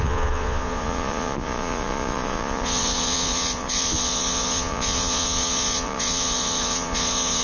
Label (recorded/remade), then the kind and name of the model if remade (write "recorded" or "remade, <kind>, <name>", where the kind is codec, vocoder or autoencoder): remade, vocoder, Vocos